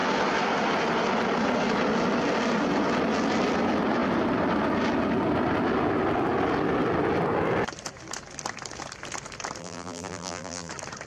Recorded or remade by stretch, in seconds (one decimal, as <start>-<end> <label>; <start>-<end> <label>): 0.0-9.6 recorded; 9.6-10.7 remade; 10.7-11.1 recorded